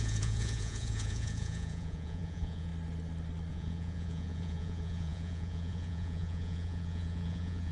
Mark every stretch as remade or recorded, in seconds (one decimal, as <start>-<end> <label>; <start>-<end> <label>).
0.0-2.7 remade; 2.7-3.5 recorded; 3.5-7.7 remade

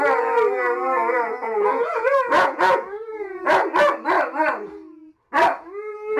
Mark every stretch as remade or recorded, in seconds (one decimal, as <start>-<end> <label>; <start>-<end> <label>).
0.0-1.3 recorded; 1.3-3.4 remade; 3.4-6.2 recorded